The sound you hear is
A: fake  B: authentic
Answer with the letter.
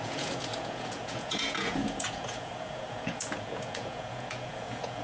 A